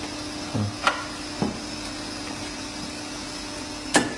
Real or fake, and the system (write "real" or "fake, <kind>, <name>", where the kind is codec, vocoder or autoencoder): real